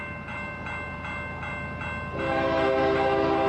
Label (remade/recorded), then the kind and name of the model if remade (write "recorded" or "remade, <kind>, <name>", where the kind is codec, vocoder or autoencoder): recorded